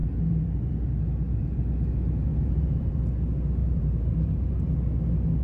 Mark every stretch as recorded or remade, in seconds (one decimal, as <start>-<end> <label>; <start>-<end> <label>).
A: 0.0-0.7 remade; 0.7-2.3 recorded; 2.3-3.0 remade; 3.0-3.6 recorded; 3.6-4.7 remade; 4.7-5.4 recorded